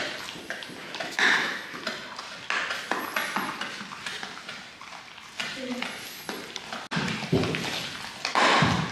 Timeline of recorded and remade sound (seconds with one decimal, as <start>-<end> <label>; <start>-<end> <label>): 0.0-0.8 recorded; 0.8-1.8 remade; 1.8-8.9 recorded